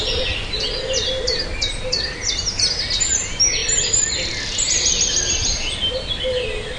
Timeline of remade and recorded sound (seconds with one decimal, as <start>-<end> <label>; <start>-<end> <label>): 0.0-6.8 recorded